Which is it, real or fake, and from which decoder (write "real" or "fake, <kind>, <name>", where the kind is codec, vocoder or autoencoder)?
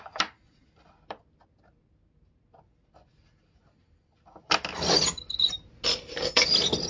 real